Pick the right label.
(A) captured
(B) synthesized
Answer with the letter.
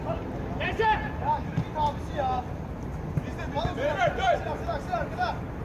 A